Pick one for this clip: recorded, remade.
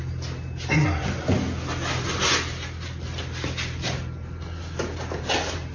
recorded